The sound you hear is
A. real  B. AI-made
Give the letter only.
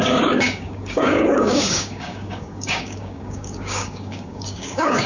B